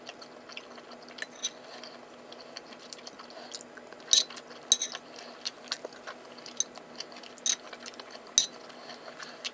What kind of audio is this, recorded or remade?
recorded